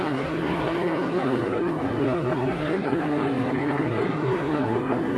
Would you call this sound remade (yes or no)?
yes